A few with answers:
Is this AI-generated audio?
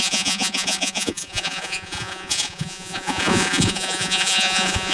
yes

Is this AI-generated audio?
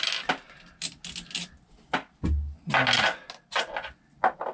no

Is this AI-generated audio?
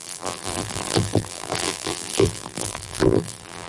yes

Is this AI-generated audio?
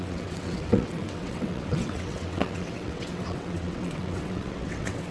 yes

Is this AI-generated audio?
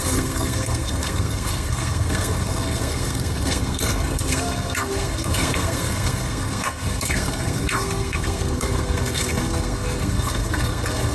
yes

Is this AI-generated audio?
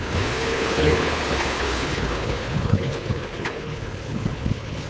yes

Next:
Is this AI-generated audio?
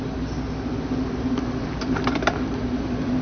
no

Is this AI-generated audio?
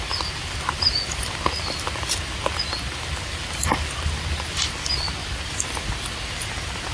no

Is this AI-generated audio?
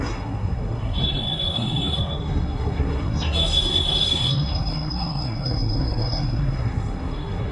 yes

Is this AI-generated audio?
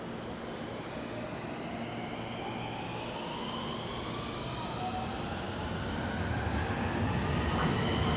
no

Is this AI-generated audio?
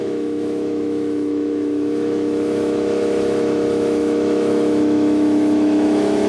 yes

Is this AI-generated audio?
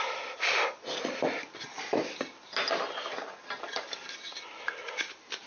no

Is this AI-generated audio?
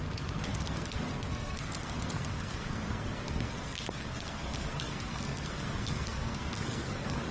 yes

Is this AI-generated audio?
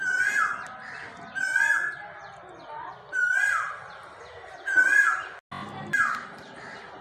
no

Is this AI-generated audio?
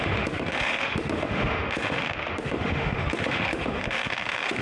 yes